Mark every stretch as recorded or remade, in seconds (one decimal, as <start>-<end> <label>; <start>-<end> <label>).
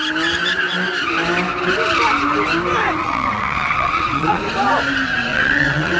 0.0-3.0 recorded; 3.0-4.4 remade; 4.4-5.3 recorded; 5.3-6.0 remade